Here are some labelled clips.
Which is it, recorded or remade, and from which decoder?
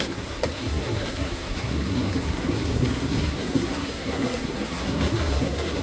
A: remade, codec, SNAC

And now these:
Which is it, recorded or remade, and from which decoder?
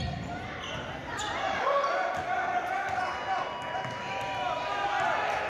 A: recorded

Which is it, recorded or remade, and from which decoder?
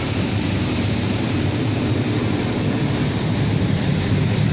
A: remade, vocoder, BigVGAN v2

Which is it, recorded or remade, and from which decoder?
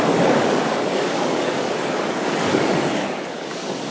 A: remade, codec, DAC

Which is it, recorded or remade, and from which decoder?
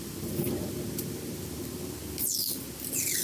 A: recorded